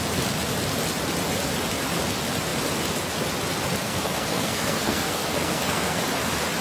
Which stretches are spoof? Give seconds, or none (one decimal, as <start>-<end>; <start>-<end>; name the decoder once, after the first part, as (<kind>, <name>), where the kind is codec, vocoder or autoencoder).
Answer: 3.8-6.0 (codec, SNAC)